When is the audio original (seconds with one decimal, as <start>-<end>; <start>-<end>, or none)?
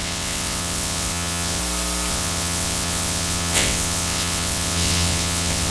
1.6-2.1